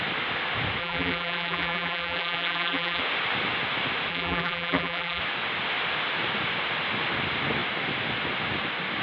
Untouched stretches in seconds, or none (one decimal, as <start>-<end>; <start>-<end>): 0.0-0.8; 3.0-4.1; 5.2-9.0